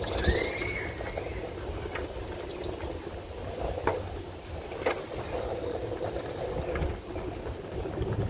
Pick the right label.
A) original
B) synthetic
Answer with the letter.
A